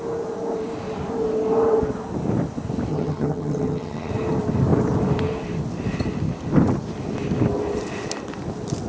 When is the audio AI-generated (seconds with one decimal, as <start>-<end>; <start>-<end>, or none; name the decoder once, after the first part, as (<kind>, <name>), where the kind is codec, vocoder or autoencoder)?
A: 2.9-4.1 (vocoder, HiFi-GAN)